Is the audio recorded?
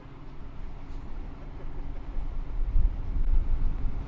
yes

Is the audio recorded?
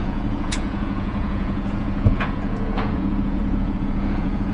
no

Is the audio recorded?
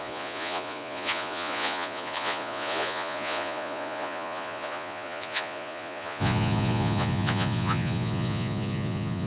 no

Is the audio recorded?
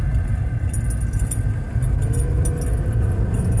yes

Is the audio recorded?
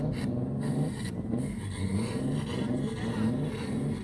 yes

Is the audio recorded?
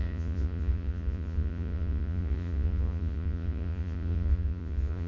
no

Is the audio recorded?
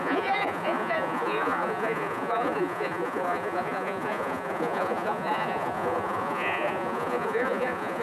no